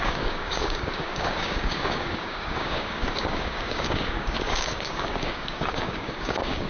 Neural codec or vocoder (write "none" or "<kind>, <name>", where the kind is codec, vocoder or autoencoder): codec, DAC